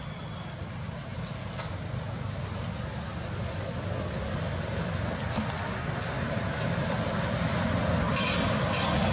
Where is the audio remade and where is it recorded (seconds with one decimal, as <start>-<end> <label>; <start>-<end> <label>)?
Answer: 0.0-9.1 recorded

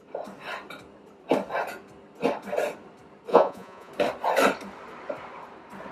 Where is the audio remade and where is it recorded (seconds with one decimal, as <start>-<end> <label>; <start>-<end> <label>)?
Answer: 0.0-3.3 recorded; 3.3-3.9 remade; 3.9-5.9 recorded

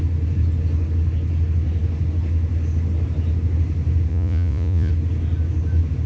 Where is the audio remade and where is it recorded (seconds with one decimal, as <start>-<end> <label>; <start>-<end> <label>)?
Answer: 0.0-4.1 recorded; 4.1-4.9 remade; 4.9-6.1 recorded

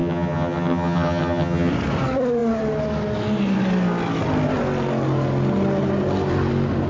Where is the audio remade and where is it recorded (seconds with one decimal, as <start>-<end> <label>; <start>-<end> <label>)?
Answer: 0.0-1.7 remade; 1.7-6.9 recorded